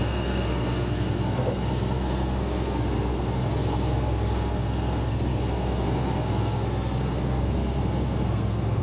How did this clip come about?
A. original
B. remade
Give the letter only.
B